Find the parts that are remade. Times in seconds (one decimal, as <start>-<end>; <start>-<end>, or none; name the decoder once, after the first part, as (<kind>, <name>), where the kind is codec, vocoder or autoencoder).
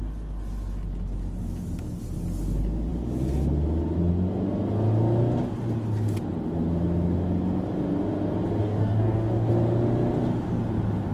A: 8.6-9.5 (codec, DAC)